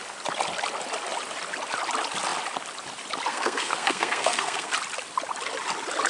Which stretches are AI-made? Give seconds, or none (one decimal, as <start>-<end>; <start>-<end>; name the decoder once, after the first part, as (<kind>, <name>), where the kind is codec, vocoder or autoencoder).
3.3-4.7 (codec, SNAC)